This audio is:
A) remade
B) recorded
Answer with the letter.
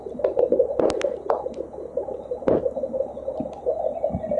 B